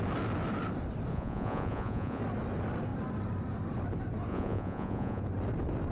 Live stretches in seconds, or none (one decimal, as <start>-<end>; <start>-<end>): 0.0-1.1; 2.2-4.3; 5.2-5.9